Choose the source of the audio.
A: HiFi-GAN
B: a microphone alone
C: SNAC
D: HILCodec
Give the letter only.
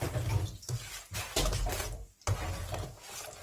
B